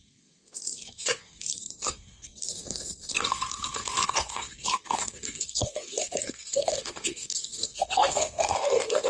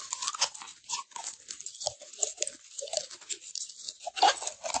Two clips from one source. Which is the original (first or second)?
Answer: second